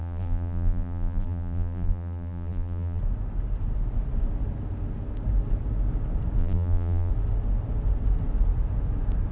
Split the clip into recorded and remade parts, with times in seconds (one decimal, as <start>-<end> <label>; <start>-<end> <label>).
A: 0.0-3.0 remade; 3.0-6.4 recorded; 6.4-7.1 remade; 7.1-9.3 recorded